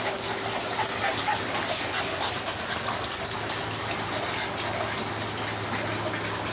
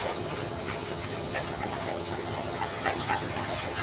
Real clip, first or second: first